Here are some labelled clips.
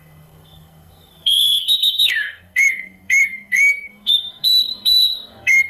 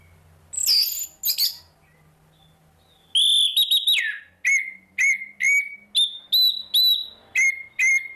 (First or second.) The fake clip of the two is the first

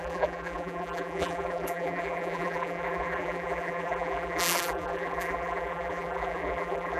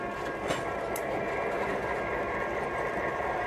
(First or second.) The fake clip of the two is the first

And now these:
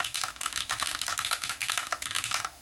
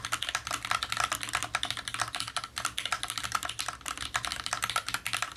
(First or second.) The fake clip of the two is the first